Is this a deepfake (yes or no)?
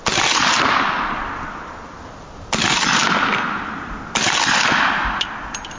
no